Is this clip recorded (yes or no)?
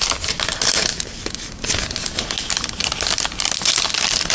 yes